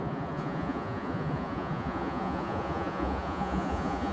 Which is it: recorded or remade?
remade